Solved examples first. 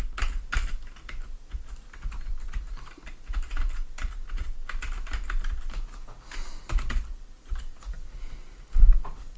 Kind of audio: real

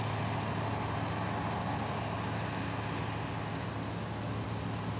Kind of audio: real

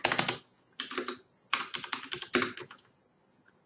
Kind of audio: real